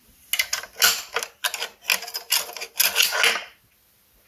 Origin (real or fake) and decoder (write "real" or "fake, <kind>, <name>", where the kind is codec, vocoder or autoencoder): real